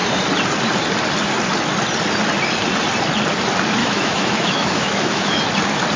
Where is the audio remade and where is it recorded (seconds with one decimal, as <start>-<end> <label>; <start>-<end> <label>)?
0.0-3.8 recorded; 3.8-5.4 remade; 5.4-6.0 recorded